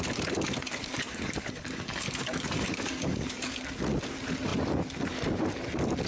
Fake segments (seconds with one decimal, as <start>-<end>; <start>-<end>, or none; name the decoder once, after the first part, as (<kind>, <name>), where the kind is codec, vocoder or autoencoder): 0.8-3.6 (codec, DAC)